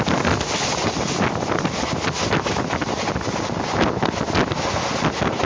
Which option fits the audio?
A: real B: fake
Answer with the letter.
A